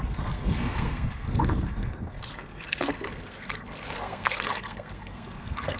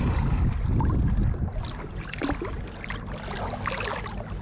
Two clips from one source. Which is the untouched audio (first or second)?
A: second